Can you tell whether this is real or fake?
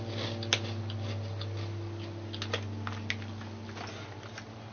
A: real